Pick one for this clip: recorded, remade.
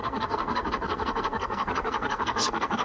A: remade